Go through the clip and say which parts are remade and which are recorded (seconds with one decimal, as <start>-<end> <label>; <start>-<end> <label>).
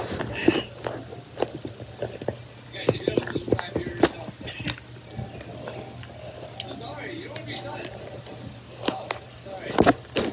0.0-10.3 recorded